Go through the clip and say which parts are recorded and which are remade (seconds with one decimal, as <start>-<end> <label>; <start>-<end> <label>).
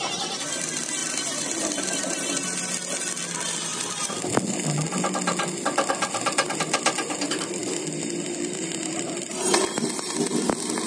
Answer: 0.0-10.9 recorded